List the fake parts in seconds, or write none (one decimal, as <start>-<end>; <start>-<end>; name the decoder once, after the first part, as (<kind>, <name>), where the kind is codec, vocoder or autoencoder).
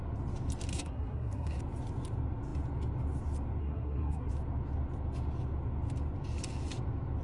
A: 0.7-1.6 (codec, SNAC); 3.6-4.3